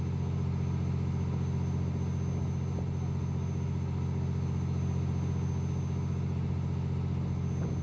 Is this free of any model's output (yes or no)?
yes